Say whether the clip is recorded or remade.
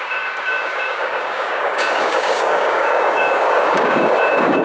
remade